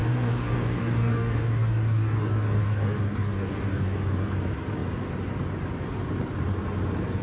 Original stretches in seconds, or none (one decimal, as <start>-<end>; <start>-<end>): 4.3-7.2